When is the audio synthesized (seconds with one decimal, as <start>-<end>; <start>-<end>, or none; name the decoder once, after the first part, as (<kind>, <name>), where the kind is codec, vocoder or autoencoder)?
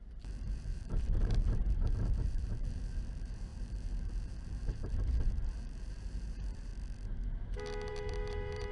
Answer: 0.0-6.7 (vocoder, BigVGAN v2); 7.9-8.7